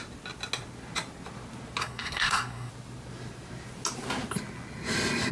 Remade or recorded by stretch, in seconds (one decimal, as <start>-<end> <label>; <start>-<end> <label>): 0.0-1.8 recorded; 1.8-2.7 remade; 2.7-5.3 recorded